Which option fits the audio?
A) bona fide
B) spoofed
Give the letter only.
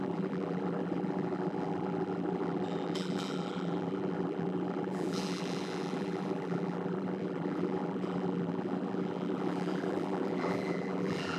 B